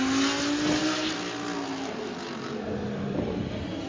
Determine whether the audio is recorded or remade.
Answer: recorded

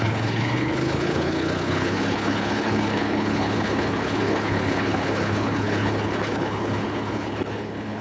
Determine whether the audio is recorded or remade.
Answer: remade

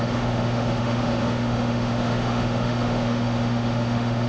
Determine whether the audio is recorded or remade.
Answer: remade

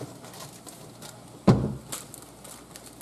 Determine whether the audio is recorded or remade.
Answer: recorded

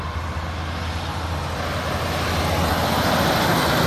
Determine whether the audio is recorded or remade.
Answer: recorded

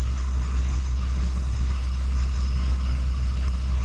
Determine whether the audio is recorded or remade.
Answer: remade